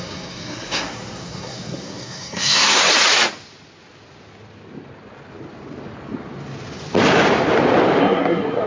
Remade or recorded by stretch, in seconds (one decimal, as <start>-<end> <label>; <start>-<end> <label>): 0.0-2.8 remade; 2.8-8.0 recorded; 8.0-8.7 remade